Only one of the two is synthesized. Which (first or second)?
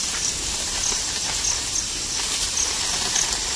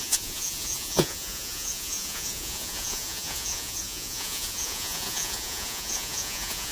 second